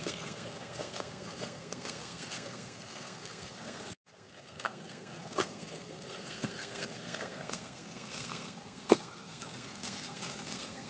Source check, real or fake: fake